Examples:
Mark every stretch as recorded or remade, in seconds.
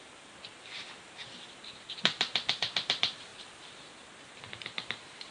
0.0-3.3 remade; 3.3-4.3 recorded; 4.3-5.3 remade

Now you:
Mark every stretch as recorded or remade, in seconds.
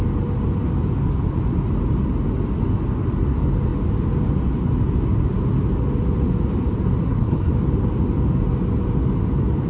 0.0-7.0 recorded; 7.0-7.5 remade; 7.5-9.7 recorded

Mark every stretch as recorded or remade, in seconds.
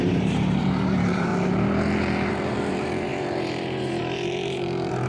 0.0-1.3 remade; 1.3-2.3 recorded; 2.3-5.1 remade